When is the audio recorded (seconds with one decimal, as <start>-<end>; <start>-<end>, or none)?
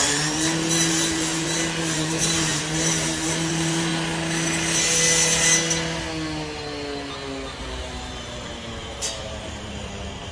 3.9-7.6